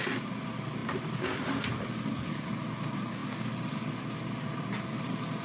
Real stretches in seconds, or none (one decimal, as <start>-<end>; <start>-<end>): 0.0-5.4